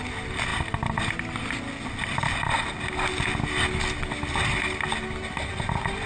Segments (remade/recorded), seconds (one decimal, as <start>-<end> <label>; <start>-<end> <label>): 0.0-6.1 recorded